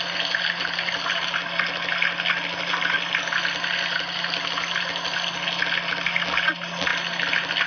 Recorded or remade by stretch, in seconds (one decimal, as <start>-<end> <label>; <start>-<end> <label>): 0.0-7.7 recorded